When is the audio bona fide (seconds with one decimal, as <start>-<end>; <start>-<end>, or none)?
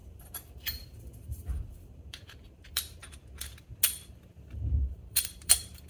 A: 3.0-4.9